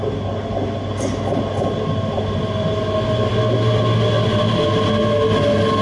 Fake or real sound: real